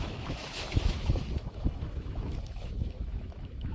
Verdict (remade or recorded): remade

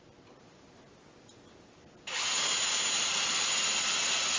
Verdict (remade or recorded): recorded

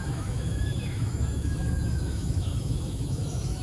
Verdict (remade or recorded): remade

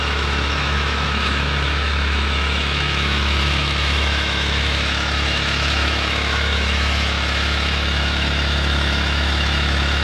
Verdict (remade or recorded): remade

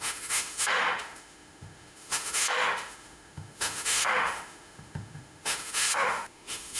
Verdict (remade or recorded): remade